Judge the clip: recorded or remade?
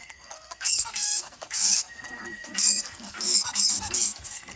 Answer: remade